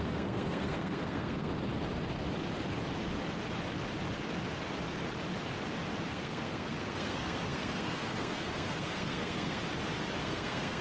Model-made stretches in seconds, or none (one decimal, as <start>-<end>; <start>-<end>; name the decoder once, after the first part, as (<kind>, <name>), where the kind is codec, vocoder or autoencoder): 0.0-1.5 (codec, SNAC); 6.1-9.6; 10.2-10.8

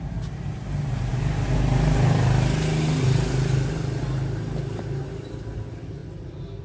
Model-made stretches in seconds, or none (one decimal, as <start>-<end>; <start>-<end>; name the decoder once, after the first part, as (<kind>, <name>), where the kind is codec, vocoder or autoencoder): none

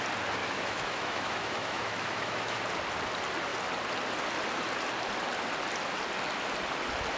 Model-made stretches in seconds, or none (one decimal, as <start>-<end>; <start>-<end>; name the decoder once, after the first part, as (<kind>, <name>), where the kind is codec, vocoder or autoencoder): 0.4-2.6 (autoencoder, DAC-VAE)

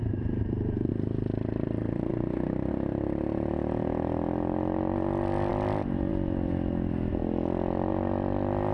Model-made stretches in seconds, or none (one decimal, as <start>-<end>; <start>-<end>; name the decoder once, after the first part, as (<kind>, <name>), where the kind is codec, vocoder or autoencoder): 0.0-0.9 (vocoder, BigVGAN v2)

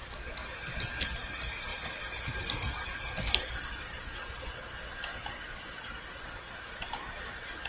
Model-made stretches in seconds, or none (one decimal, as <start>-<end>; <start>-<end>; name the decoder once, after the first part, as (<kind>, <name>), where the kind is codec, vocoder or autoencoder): none

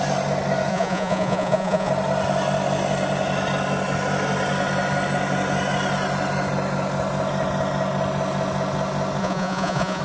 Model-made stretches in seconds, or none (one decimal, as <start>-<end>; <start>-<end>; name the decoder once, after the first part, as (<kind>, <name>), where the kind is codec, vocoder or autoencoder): 0.7-1.9 (vocoder, Vocos); 9.2-10.0

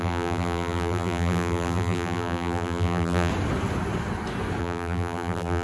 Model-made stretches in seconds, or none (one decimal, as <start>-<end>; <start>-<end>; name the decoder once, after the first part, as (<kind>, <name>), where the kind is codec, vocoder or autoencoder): 0.0-3.3 (vocoder, BigVGAN v2); 4.6-5.6